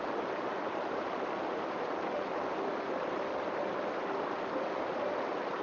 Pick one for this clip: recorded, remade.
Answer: recorded